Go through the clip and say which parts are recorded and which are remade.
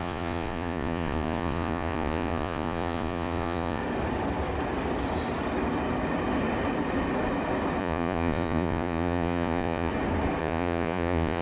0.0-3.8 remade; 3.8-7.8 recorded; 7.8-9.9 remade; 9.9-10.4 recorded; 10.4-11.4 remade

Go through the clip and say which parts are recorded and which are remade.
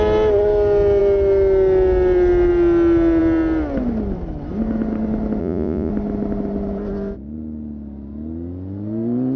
0.0-5.4 recorded; 5.4-5.9 remade; 5.9-9.4 recorded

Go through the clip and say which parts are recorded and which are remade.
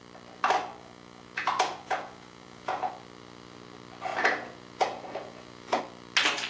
0.0-0.8 recorded; 0.8-2.9 remade; 2.9-4.1 recorded; 4.1-5.8 remade; 5.8-6.5 recorded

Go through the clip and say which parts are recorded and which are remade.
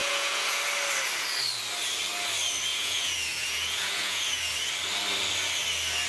0.0-0.6 remade; 0.6-2.7 recorded; 2.7-4.5 remade; 4.5-6.1 recorded